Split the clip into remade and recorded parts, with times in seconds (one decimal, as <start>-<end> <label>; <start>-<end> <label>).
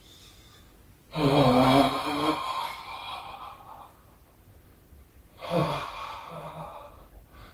0.0-7.5 recorded